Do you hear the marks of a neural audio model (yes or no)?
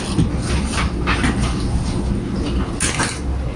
no